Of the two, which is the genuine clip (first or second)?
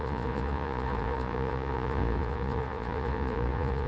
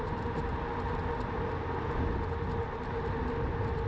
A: second